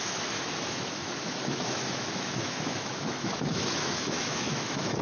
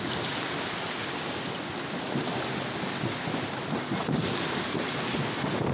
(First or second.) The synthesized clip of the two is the first